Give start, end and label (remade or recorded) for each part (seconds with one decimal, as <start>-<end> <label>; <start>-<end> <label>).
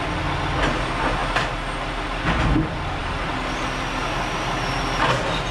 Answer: 0.0-5.5 recorded